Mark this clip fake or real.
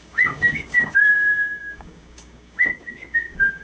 fake